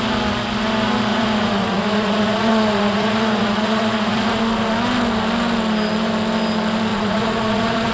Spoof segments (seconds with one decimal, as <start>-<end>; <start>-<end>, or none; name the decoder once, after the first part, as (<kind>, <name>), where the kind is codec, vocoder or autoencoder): 1.1-4.4 (vocoder, Vocos); 6.9-7.9